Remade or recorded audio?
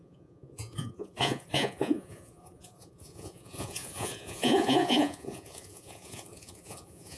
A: remade